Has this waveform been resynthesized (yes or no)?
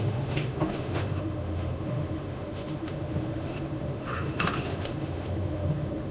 yes